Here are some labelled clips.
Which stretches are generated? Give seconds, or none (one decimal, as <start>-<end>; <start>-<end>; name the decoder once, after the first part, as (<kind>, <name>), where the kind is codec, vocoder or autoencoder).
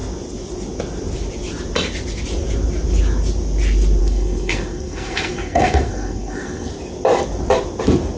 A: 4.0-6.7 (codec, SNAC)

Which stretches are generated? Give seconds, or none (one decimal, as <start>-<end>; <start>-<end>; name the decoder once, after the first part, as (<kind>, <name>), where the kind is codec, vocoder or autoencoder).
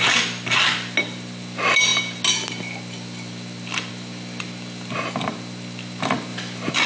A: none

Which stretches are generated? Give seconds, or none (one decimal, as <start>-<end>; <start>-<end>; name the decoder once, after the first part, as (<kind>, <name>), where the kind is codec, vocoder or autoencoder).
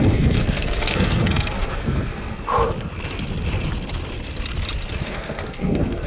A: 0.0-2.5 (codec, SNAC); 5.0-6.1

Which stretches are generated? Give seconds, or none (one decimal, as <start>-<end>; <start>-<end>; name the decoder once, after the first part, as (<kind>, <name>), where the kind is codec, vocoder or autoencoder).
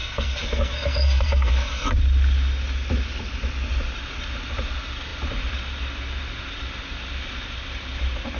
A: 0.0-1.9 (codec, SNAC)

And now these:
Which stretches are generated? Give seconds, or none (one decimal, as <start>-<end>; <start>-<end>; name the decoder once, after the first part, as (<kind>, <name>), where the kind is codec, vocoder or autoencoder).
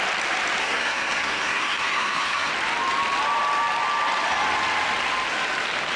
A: 0.6-2.5 (codec, SNAC)